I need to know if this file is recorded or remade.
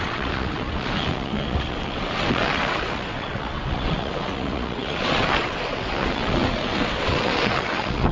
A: remade